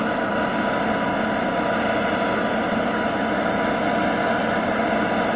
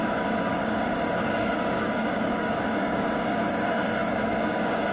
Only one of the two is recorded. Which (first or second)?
first